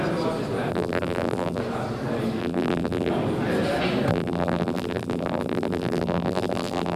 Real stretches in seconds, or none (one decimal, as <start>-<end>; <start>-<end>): 0.0-0.7; 1.6-2.4; 3.1-4.1